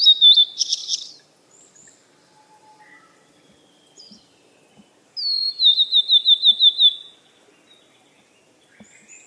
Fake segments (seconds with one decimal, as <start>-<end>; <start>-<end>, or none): none